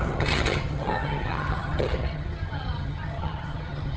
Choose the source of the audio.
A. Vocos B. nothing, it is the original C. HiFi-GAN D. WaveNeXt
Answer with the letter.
C